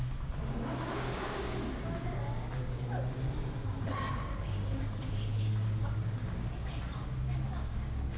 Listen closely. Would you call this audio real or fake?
fake